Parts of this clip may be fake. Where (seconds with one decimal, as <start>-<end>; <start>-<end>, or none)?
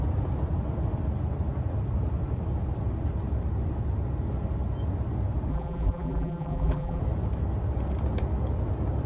5.5-7.0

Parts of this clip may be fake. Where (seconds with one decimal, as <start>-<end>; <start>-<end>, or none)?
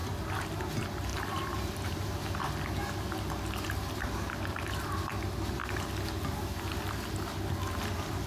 1.1-2.4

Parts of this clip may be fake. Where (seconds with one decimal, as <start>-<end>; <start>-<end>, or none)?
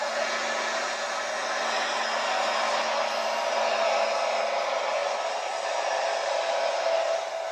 none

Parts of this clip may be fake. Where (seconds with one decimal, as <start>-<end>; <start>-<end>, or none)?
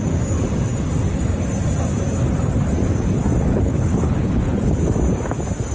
3.5-4.8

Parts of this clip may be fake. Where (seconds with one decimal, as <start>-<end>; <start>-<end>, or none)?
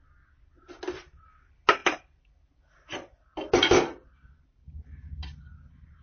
none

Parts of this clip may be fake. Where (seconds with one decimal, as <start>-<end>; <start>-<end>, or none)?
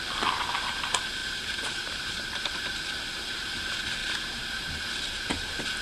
1.2-2.3; 4.0-4.9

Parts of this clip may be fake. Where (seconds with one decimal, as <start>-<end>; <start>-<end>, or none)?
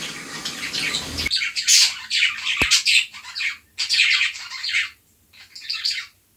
none